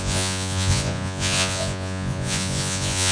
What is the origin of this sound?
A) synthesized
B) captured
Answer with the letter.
A